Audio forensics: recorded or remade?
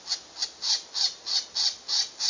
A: recorded